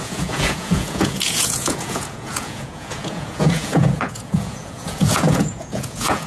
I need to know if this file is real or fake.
fake